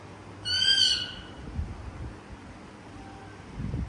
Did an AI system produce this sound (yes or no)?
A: no